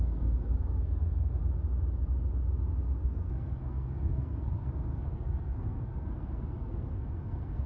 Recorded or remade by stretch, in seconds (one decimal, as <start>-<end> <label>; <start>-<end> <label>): 0.0-1.4 remade; 1.4-3.0 recorded; 3.0-7.7 remade

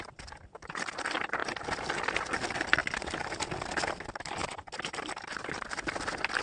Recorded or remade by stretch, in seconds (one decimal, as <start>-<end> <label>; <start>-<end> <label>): 0.0-1.4 remade; 1.4-2.1 recorded; 2.1-2.8 remade; 2.8-3.7 recorded; 3.7-6.4 remade